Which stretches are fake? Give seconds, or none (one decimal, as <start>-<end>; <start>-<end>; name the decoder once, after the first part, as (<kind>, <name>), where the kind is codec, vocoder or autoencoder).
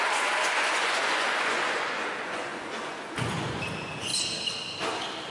0.0-4.1 (vocoder, Vocos)